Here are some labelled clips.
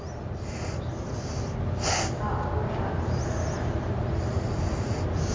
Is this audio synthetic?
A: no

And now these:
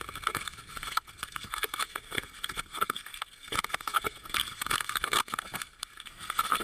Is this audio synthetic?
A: yes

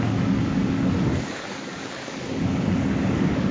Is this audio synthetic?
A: yes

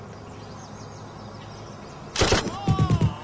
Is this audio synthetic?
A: no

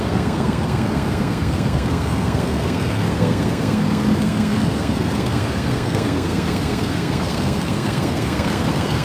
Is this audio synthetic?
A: yes